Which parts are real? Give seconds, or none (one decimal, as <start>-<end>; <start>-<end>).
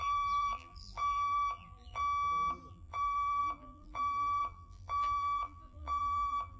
2.0-2.7